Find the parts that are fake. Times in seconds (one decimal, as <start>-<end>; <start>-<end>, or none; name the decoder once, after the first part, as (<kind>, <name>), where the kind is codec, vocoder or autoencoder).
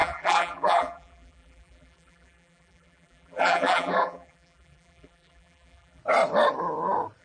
0.0-6.0 (vocoder, BigVGAN v2)